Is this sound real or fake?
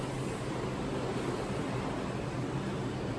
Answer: real